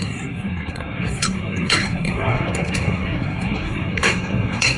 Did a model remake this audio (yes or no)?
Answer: yes